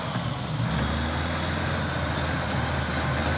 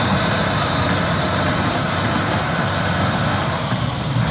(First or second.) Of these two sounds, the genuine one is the first